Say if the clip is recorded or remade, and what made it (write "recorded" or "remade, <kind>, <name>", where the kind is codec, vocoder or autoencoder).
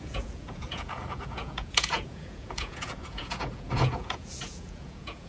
remade, vocoder, Vocos